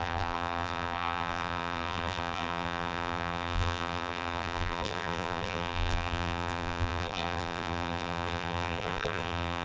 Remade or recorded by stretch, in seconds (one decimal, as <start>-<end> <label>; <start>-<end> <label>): 0.0-9.6 remade